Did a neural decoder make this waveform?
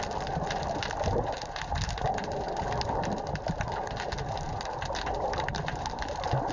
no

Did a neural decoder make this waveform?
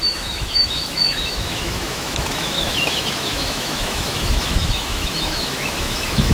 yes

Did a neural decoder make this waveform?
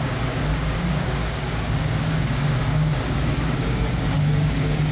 yes